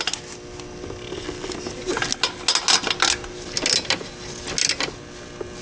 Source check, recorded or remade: recorded